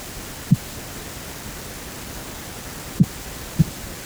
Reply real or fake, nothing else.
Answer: real